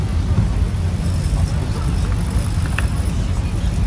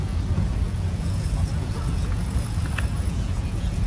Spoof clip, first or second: second